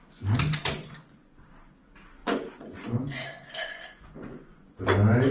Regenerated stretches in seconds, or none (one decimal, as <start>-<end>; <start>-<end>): 0.6-1.5; 2.2-4.8